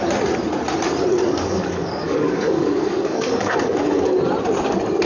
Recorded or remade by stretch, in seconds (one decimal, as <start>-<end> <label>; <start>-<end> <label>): 0.0-1.1 recorded; 1.1-4.2 remade; 4.2-5.1 recorded